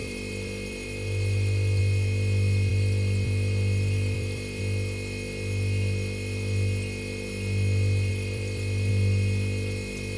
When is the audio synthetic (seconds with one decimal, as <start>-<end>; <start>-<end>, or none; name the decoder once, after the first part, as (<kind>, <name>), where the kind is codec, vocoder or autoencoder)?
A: 0.0-1.8 (vocoder, BigVGAN v2); 2.7-4.6; 8.1-8.9